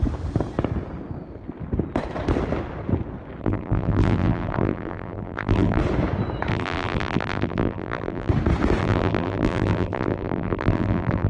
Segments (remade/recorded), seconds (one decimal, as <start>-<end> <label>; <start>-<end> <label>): 0.0-3.4 recorded; 3.4-5.8 remade; 5.8-6.5 recorded; 6.5-8.3 remade; 8.3-8.8 recorded; 8.8-11.3 remade